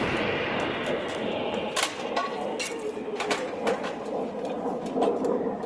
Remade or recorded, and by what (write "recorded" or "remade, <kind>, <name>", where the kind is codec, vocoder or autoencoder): recorded